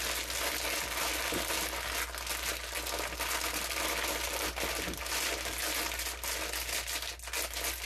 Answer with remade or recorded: recorded